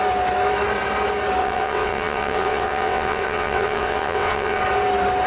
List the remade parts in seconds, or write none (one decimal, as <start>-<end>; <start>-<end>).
1.4-4.6